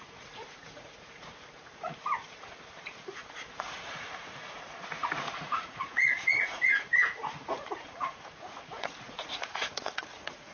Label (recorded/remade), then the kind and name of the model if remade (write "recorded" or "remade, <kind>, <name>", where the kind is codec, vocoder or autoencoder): remade, vocoder, Vocos